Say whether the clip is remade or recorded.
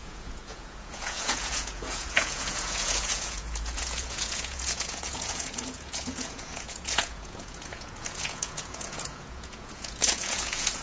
remade